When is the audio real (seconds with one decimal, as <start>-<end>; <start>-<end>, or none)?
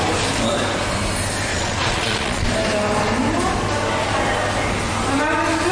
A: 0.0-1.5; 2.4-5.7